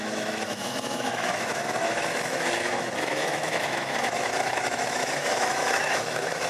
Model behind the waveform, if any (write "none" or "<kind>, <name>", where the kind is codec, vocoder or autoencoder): autoencoder, DAC-VAE